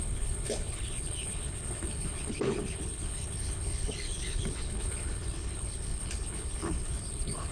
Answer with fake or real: fake